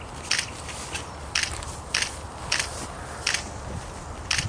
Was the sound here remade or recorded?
recorded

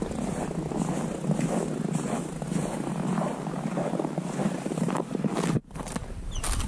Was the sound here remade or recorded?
recorded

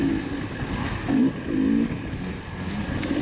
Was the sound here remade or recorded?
recorded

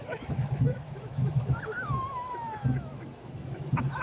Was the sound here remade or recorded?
remade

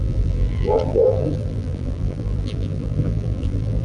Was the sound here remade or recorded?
remade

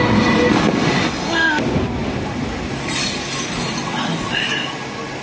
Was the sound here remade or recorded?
recorded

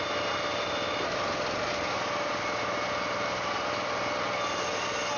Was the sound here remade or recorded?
recorded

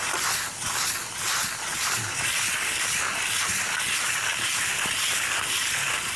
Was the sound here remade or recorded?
recorded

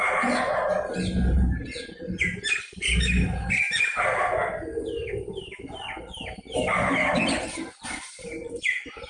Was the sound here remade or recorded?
recorded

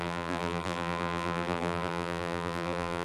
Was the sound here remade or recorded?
remade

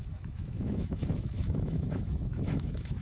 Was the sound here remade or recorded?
remade